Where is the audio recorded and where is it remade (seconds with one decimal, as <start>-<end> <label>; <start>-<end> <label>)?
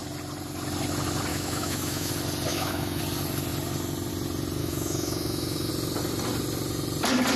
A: 0.0-1.3 recorded; 1.3-2.1 remade; 2.1-2.5 recorded; 2.5-3.0 remade; 3.0-4.6 recorded; 4.6-5.7 remade; 5.7-7.4 recorded